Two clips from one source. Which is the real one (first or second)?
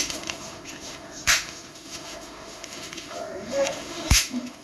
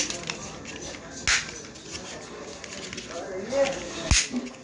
second